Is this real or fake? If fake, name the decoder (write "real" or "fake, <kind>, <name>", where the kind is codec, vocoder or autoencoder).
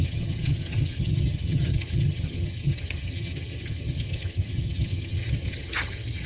fake, vocoder, HiFi-GAN